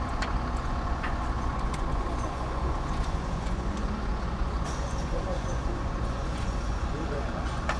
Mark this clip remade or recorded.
remade